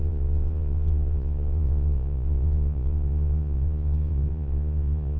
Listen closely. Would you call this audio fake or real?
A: fake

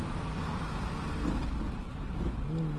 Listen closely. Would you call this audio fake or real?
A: real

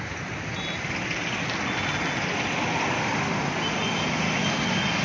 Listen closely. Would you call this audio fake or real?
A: real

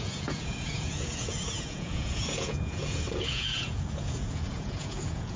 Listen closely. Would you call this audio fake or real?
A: fake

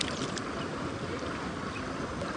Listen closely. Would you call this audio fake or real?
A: real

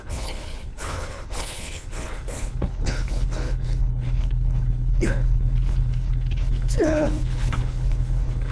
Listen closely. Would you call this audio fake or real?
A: fake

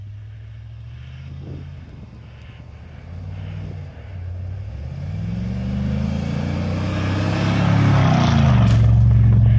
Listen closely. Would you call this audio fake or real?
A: real